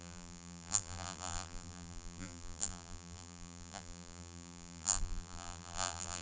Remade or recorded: remade